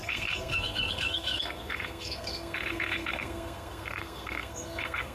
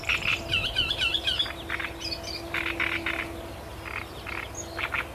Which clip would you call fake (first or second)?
first